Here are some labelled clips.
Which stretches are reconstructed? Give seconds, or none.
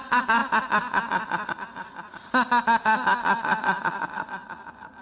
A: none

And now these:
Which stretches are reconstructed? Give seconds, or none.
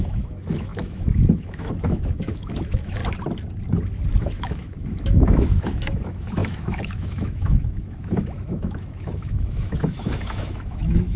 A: 0.0-3.0; 4.2-11.2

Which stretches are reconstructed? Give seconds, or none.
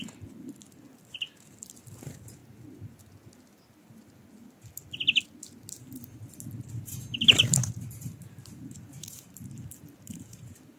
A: 0.0-2.4; 6.7-10.8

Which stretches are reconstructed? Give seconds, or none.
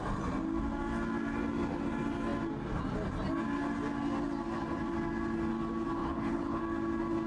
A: 6.0-6.6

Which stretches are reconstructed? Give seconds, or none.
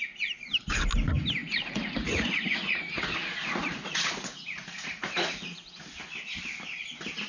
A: 1.4-5.8